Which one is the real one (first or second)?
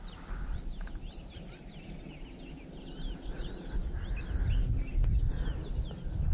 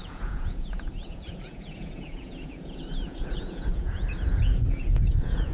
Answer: first